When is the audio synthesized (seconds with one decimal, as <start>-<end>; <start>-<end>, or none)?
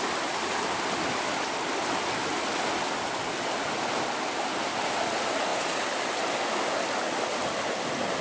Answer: none